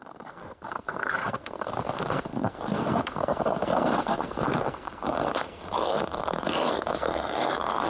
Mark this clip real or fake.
fake